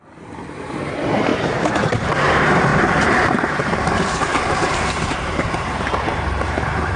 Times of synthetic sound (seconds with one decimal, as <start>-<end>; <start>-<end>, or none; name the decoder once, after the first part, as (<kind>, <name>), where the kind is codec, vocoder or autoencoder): 0.0-1.3 (vocoder, BigVGAN v2); 1.9-2.7; 3.3-7.0